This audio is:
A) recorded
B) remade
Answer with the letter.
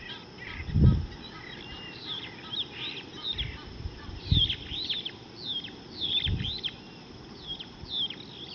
A